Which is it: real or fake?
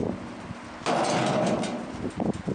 real